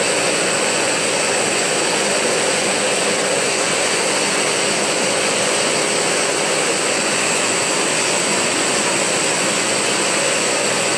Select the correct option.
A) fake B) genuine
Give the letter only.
A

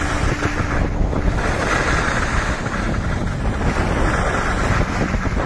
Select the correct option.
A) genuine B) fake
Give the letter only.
A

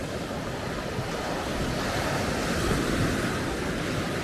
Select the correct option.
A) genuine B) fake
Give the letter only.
A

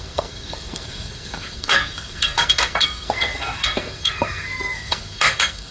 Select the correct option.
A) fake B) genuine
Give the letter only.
A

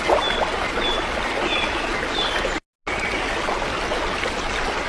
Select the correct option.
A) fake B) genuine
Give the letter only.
B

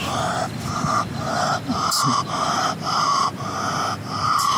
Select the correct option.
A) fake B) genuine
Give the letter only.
A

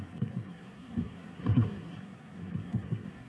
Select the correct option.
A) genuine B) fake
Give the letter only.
B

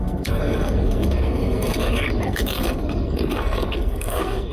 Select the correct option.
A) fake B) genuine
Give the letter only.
A